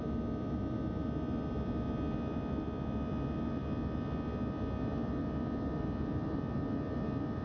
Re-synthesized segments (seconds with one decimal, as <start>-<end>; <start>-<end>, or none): none